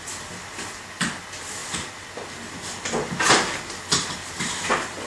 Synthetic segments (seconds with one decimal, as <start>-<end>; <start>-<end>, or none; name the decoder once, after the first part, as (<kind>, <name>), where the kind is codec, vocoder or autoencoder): none